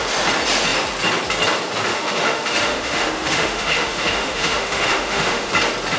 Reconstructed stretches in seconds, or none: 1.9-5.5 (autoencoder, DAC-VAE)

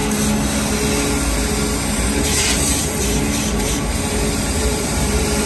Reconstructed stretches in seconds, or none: 1.9-5.5 (vocoder, BigVGAN v2)

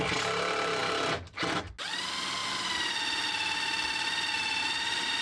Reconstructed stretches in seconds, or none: none

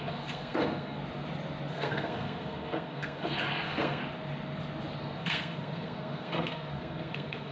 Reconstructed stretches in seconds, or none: 0.0-1.0 (codec, SNAC); 1.7-4.0; 5.0-7.5